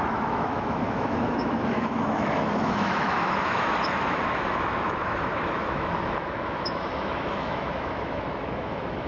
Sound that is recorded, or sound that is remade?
remade